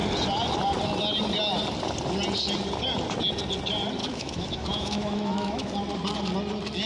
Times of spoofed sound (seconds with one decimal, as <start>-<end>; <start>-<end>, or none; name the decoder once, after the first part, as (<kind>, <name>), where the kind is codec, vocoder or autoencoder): 4.0-5.7 (autoencoder, DAC-VAE)